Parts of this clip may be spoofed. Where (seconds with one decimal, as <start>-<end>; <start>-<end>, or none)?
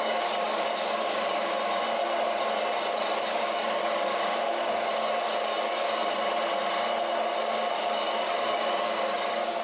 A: 0.0-2.0; 3.2-6.0; 7.3-9.6